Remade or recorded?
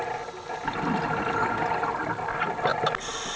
recorded